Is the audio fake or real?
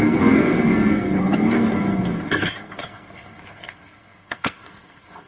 fake